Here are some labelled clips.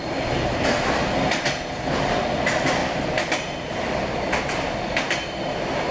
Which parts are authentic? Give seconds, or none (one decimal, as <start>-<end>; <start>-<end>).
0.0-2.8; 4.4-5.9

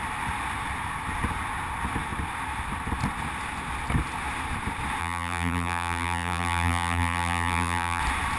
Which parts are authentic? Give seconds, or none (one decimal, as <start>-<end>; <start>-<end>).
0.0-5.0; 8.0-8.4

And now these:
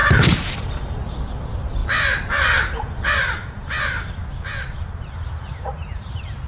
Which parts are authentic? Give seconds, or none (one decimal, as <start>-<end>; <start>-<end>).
1.8-5.7